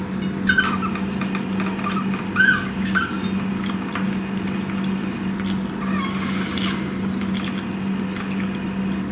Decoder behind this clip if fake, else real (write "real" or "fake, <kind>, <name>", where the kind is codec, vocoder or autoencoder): real